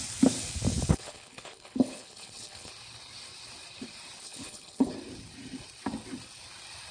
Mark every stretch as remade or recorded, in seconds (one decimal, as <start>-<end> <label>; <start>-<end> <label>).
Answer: 0.0-0.7 recorded; 0.7-2.7 remade; 2.7-4.2 recorded; 4.2-4.9 remade; 4.9-6.9 recorded